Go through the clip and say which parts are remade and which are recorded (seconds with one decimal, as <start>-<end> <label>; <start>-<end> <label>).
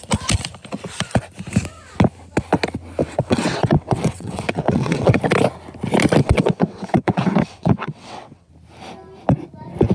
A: 0.0-3.0 recorded; 3.0-5.2 remade; 5.2-6.2 recorded; 6.2-8.5 remade; 8.5-9.9 recorded